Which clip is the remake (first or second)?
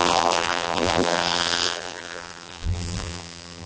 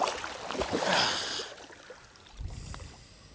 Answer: first